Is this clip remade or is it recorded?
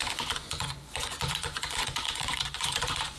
remade